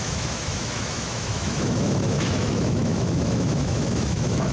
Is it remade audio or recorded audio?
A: remade